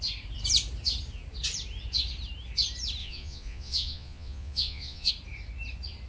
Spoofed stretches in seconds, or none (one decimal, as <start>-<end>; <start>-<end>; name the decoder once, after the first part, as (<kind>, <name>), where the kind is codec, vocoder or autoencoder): 3.0-5.1 (vocoder, Vocos)